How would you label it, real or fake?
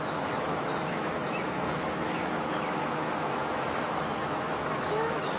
fake